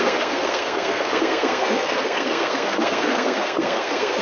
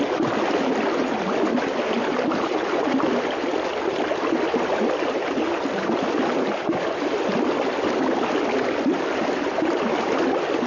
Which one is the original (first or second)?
second